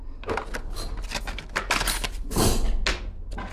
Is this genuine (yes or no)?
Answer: yes